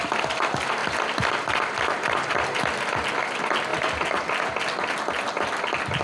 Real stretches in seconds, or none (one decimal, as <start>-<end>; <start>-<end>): 0.0-6.0